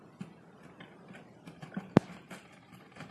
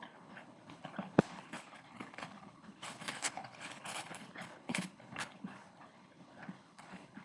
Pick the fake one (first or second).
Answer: second